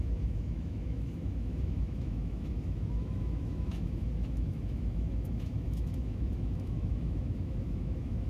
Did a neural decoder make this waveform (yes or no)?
yes